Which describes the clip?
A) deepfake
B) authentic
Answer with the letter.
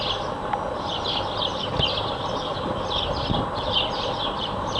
B